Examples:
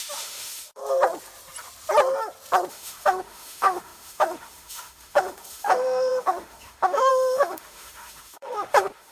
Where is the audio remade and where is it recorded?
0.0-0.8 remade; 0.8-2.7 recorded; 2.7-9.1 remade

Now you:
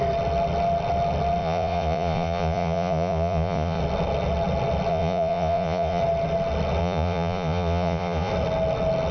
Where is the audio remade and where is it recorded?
0.0-1.4 recorded; 1.4-3.8 remade; 3.8-4.9 recorded; 4.9-6.0 remade; 6.0-6.8 recorded; 6.8-8.3 remade; 8.3-9.1 recorded